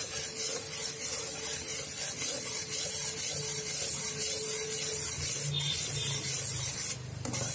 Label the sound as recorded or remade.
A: recorded